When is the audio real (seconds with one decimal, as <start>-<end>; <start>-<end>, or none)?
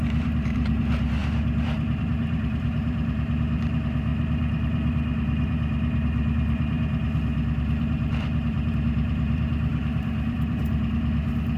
none